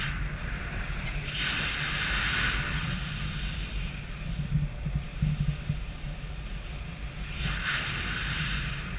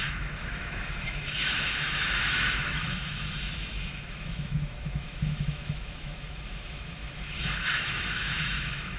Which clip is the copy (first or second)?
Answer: second